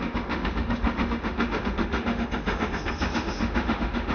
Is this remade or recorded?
remade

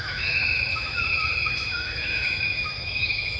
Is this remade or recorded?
remade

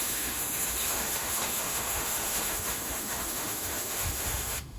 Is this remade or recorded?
remade